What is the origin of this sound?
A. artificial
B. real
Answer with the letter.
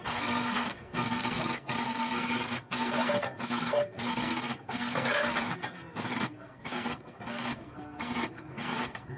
A